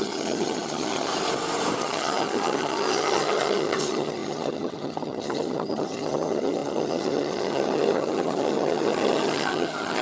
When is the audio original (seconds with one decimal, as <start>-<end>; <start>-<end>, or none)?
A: 1.1-1.8